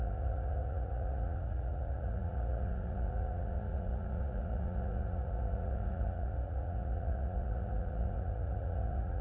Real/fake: fake